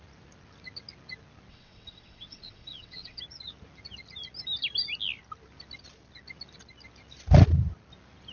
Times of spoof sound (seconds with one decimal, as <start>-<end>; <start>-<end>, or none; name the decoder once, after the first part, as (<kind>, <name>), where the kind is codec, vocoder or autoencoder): 1.5-3.2 (vocoder, WaveNeXt)